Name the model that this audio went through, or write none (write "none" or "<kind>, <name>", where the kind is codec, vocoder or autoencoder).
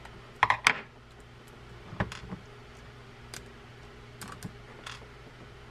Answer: none